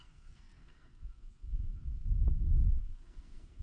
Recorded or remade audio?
remade